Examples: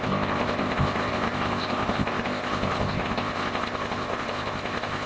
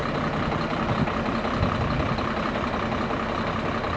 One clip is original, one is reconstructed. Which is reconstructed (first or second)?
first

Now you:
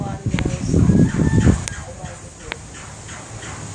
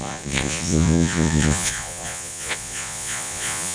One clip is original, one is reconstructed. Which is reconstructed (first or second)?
second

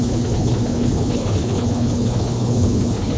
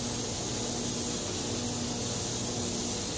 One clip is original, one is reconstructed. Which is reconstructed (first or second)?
first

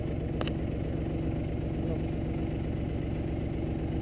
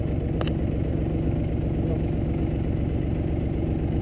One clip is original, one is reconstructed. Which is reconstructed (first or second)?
second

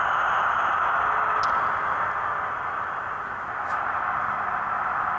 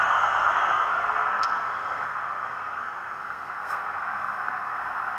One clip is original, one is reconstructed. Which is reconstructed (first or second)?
second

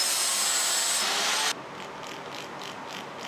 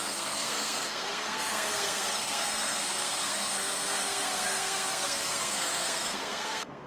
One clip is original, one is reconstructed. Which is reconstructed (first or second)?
second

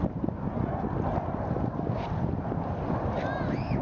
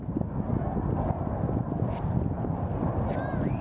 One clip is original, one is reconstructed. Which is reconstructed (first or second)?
first